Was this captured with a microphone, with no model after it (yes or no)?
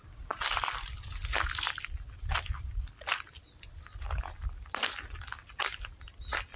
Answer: yes